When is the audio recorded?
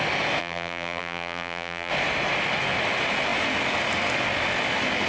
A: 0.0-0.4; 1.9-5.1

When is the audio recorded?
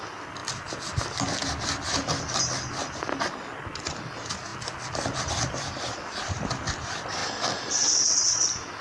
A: 0.4-4.0; 7.2-7.8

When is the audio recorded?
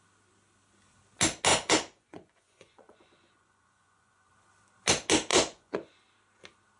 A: 0.0-1.5; 4.3-5.3; 6.0-6.8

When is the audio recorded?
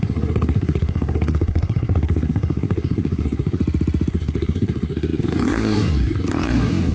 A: 3.6-4.1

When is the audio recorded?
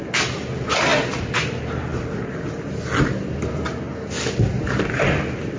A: 0.0-5.6